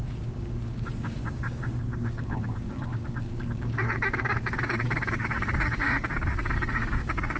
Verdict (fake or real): fake